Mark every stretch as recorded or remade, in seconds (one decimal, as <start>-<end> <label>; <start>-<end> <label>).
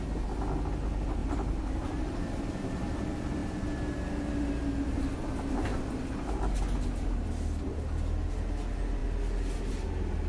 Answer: 0.0-1.2 recorded; 1.2-2.7 remade; 2.7-10.3 recorded